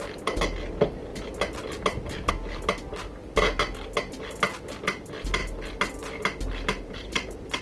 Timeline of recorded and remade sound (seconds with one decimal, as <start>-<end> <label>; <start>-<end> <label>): 0.0-7.6 recorded